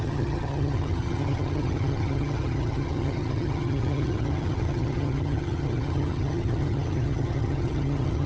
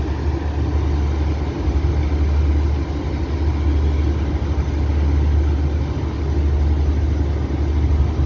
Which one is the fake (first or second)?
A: first